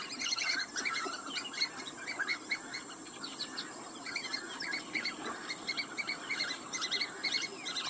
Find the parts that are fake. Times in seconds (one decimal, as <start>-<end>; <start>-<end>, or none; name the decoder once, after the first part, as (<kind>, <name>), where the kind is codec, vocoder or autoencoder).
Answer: none